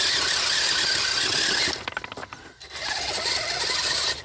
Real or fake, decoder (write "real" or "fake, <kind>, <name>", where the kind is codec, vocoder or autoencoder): real